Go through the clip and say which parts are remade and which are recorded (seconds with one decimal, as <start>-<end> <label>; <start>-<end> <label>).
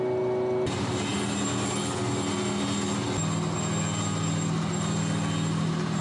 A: 0.0-6.0 recorded